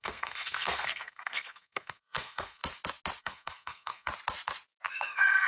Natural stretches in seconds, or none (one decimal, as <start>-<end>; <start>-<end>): 2.6-3.2; 4.1-4.9